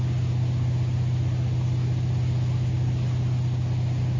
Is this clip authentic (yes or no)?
yes